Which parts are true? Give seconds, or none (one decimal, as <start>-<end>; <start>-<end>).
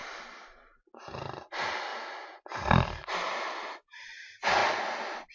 0.0-5.3